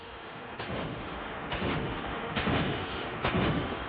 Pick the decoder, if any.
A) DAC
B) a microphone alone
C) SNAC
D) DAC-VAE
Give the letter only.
D